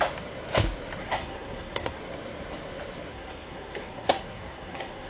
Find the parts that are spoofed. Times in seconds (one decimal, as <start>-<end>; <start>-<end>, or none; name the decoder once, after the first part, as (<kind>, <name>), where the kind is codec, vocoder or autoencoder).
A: 1.0-2.0 (codec, SNAC); 3.1-5.1